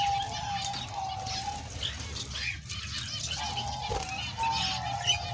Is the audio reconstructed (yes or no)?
no